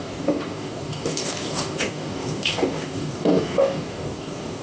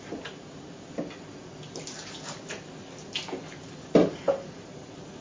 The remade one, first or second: first